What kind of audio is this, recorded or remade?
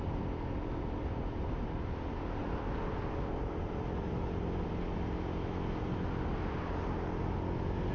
recorded